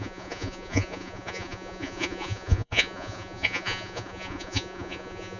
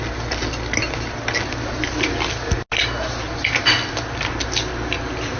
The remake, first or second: first